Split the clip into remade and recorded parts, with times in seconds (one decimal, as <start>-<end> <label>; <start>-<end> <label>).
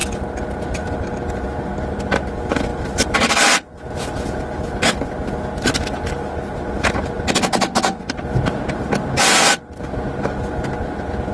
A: 0.0-11.3 recorded